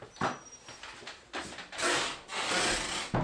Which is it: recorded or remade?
recorded